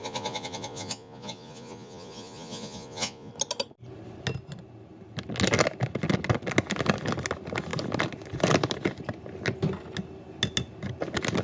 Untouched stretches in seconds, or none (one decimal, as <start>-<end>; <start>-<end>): 3.3-11.4